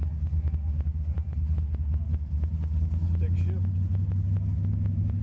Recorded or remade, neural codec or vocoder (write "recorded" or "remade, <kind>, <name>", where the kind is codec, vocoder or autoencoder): recorded